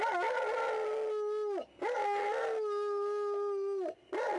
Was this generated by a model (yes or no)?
no